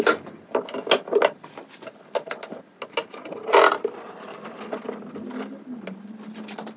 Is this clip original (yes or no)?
yes